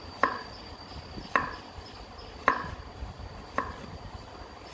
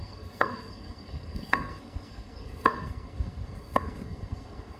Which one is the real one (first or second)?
first